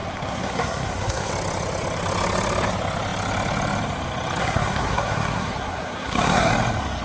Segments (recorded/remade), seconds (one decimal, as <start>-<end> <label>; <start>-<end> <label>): 0.0-1.3 remade; 1.3-4.4 recorded; 4.4-6.5 remade; 6.5-7.0 recorded